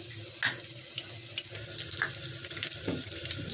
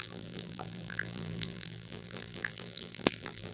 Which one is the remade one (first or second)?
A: second